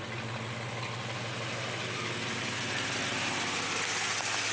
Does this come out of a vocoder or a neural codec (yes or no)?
no